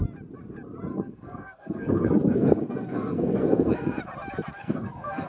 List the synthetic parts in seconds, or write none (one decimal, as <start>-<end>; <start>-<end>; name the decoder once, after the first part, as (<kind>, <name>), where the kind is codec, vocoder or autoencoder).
0.9-4.0 (codec, SNAC); 4.6-5.3